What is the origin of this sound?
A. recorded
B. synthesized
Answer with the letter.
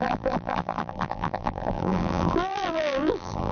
B